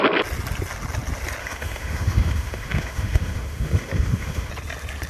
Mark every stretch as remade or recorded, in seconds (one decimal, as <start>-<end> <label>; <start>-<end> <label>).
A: 0.0-1.4 recorded; 1.4-4.5 remade; 4.5-5.1 recorded